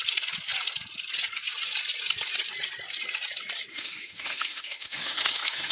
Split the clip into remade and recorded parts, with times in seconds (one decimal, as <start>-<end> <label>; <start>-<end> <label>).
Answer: 0.0-3.7 recorded; 3.7-5.7 remade